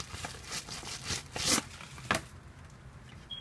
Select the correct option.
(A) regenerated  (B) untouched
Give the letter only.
B